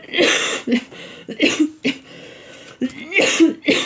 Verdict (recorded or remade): recorded